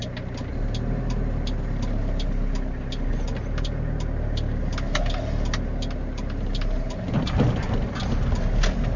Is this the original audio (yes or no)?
yes